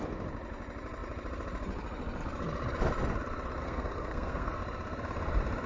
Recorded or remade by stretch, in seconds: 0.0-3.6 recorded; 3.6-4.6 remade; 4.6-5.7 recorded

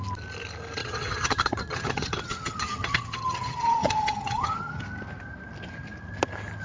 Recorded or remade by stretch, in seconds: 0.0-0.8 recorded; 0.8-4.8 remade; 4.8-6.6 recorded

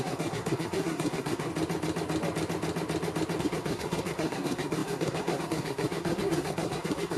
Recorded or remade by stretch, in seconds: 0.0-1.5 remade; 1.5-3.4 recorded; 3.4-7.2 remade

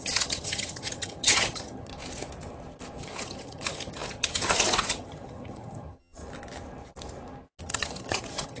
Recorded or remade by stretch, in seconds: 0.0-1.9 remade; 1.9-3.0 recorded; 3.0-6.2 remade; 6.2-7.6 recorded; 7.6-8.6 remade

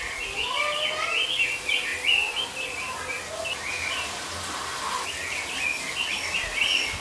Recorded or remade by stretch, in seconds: 0.0-7.0 recorded

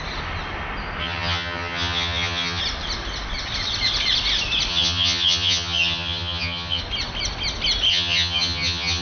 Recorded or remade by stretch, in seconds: 0.0-1.0 recorded; 1.0-2.6 remade; 2.6-4.7 recorded; 4.7-6.8 remade; 6.8-7.9 recorded; 7.9-9.0 remade